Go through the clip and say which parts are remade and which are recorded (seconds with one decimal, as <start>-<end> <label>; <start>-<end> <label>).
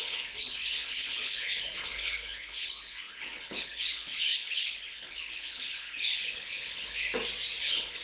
0.0-7.1 remade; 7.1-7.6 recorded; 7.6-8.0 remade